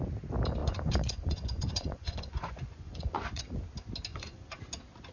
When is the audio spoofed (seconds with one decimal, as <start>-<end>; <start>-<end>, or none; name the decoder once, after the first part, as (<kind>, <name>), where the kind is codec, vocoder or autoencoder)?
0.6-3.4 (vocoder, Vocos); 4.1-4.6